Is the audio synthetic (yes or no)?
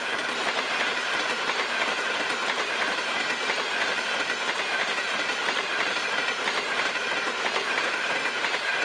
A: yes